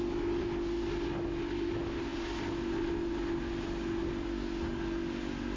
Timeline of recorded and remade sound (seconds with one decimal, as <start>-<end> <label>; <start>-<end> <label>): 0.0-5.6 recorded